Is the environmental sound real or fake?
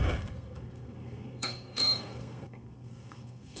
fake